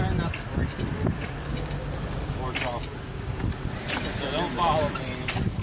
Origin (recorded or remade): recorded